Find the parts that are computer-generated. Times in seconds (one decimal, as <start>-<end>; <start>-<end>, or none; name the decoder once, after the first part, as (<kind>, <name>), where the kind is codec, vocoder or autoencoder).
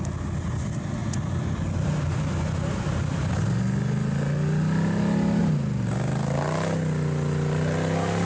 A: none